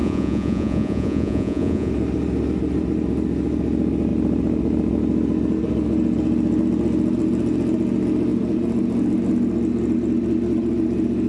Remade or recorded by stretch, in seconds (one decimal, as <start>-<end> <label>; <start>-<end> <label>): 0.0-1.9 remade; 1.9-11.3 recorded